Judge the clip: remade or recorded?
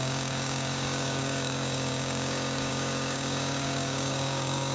remade